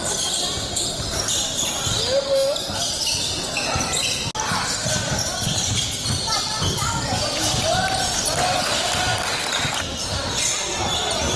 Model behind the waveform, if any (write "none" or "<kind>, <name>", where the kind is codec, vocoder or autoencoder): none